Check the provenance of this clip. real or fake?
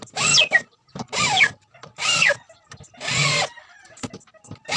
real